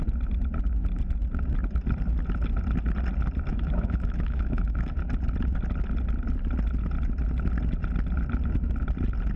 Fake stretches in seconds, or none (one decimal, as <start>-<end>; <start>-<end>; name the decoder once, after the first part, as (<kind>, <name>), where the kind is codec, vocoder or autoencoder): 3.5-5.0 (autoencoder, DAC-VAE)